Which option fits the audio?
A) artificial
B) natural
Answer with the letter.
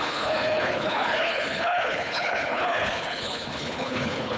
A